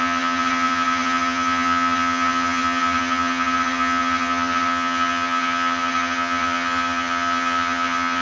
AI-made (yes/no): yes